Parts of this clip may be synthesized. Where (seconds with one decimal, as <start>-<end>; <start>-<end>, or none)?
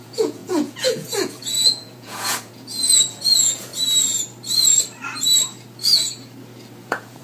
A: 0.0-3.7; 6.8-7.2